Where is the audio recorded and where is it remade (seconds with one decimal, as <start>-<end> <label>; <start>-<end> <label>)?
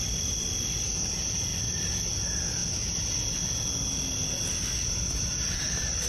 0.0-6.1 recorded